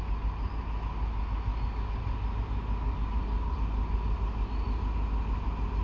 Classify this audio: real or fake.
real